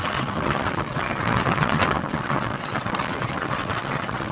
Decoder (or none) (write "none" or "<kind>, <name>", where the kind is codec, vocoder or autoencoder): vocoder, WaveNeXt